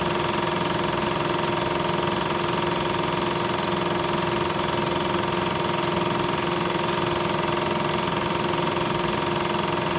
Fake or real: real